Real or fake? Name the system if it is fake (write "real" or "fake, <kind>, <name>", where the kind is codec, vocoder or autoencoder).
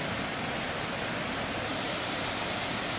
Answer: real